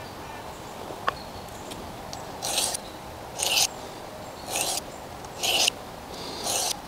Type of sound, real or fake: real